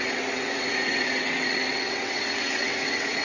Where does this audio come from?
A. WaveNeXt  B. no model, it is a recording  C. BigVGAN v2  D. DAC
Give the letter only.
A